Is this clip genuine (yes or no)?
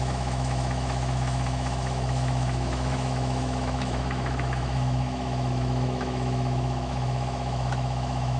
no